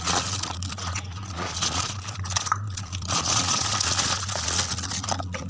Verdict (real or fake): fake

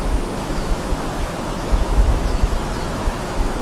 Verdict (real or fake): fake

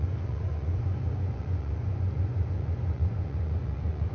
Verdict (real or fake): fake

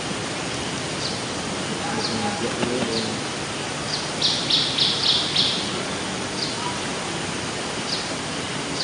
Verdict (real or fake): real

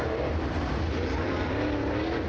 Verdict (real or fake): real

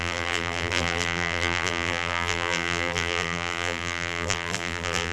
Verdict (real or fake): fake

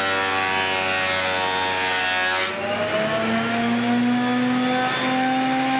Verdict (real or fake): real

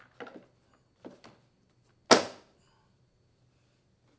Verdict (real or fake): real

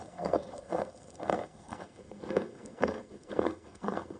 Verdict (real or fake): fake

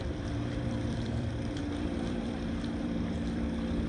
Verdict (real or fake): fake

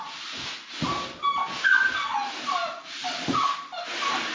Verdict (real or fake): real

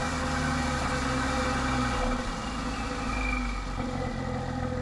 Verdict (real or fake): real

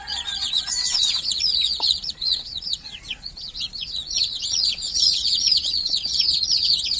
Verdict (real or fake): fake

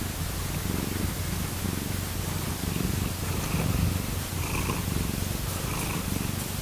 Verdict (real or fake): real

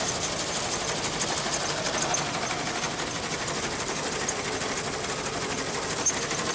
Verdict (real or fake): real